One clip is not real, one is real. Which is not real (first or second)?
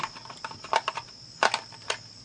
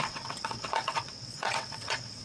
second